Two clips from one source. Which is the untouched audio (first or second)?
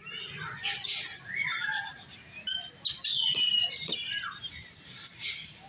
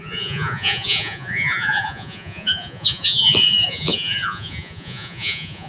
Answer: first